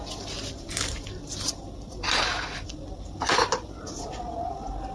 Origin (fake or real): real